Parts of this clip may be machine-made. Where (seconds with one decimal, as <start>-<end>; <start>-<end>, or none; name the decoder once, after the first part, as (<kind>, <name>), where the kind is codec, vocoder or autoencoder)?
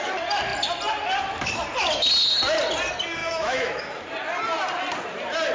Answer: 3.2-3.8 (autoencoder, DAC-VAE)